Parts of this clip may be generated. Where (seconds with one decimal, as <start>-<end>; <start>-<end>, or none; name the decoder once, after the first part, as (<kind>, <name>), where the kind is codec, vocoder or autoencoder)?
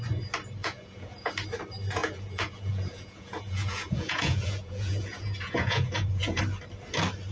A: 0.6-1.3 (vocoder, Vocos); 2.0-6.4